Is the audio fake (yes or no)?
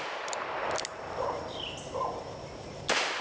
no